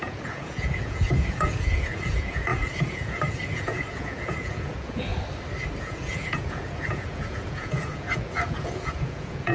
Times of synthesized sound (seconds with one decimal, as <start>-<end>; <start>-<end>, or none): 0.0-5.1; 5.8-9.5